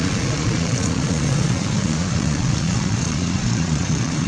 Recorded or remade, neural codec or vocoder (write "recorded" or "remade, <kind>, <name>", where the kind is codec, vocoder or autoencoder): remade, vocoder, Vocos